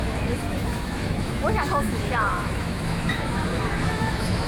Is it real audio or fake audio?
fake